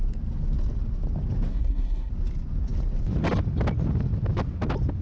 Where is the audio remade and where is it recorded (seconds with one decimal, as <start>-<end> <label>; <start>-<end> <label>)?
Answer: 0.0-1.5 recorded; 1.5-2.1 remade; 2.1-5.0 recorded